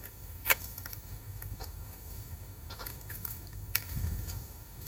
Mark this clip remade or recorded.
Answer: remade